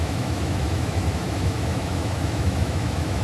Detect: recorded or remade remade